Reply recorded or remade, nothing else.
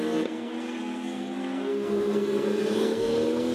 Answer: remade